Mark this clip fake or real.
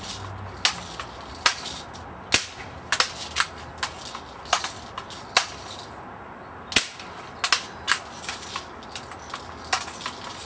real